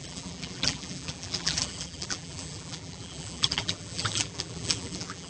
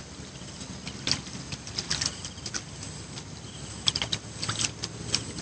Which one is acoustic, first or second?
second